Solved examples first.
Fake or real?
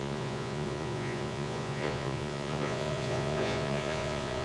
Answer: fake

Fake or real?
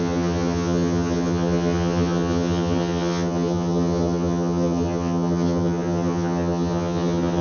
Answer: fake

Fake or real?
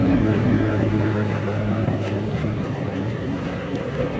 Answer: fake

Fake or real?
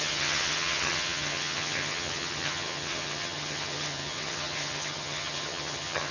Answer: fake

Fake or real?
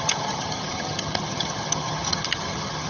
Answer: fake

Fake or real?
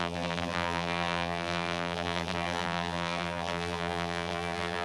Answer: fake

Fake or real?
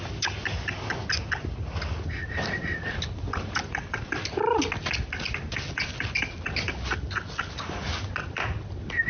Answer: real